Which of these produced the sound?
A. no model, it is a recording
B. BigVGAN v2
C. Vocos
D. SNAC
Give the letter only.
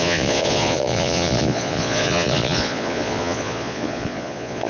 C